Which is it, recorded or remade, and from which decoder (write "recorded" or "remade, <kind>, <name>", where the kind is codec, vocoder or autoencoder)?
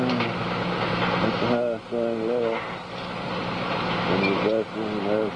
recorded